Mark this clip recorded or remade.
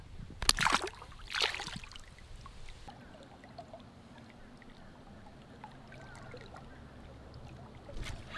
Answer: recorded